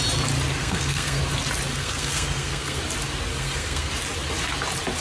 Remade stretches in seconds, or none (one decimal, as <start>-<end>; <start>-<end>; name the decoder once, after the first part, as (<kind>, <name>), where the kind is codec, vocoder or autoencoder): 0.6-1.2 (codec, SNAC); 1.7-2.8; 3.3-3.9